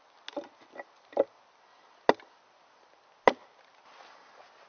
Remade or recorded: recorded